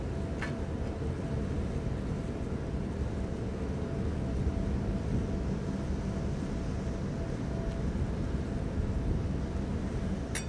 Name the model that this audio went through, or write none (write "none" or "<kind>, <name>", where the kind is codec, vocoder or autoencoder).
none